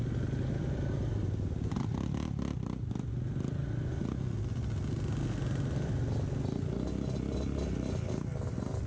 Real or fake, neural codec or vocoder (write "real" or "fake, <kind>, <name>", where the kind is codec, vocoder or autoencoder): real